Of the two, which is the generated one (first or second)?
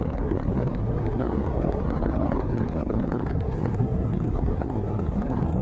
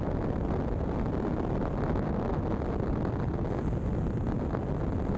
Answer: first